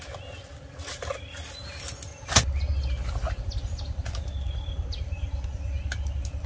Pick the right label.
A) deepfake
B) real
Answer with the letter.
B